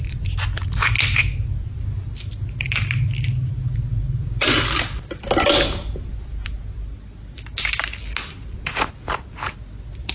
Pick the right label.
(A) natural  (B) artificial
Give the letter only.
A